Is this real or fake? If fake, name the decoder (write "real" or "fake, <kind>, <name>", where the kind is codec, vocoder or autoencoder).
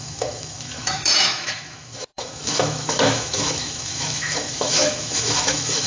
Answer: fake, autoencoder, DAC-VAE